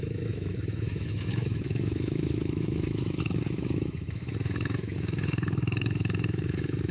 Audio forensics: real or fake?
fake